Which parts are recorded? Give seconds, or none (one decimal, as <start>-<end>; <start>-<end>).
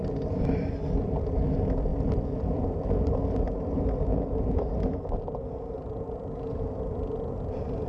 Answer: 0.0-1.9; 2.6-7.9